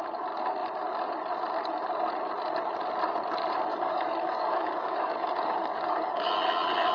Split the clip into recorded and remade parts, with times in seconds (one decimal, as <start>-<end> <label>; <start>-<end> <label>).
0.0-3.7 recorded; 3.7-6.3 remade; 6.3-6.9 recorded